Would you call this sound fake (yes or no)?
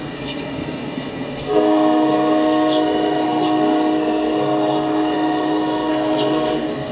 yes